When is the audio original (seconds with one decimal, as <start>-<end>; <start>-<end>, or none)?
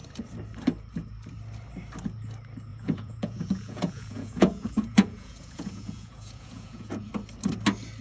0.0-2.7; 7.1-8.0